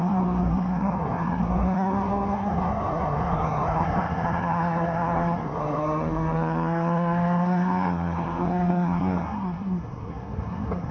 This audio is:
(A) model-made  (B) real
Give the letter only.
A